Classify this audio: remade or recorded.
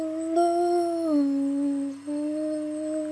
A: recorded